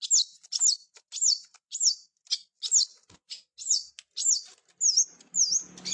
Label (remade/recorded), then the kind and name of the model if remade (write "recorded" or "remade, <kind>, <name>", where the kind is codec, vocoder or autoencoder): recorded